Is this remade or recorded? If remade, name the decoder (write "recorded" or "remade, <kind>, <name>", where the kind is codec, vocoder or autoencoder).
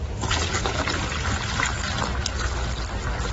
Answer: recorded